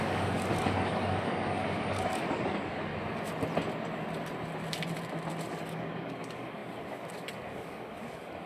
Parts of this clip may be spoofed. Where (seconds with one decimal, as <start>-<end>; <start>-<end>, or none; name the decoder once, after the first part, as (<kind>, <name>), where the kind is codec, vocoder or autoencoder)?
0.0-2.9 (codec, DAC); 5.6-8.5